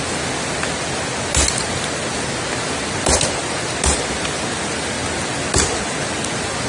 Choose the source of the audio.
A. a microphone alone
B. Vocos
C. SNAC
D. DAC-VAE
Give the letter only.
A